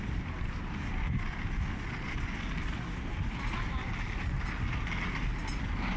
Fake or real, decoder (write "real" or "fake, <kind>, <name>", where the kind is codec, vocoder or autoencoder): real